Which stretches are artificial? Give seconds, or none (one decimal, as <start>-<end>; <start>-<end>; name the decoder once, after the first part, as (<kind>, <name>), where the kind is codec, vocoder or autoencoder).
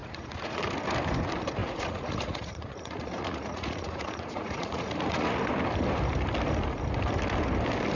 0.0-0.6 (vocoder, Vocos); 1.6-5.3